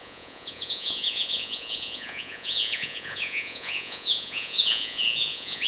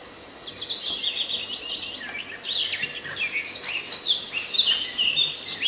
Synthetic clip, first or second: first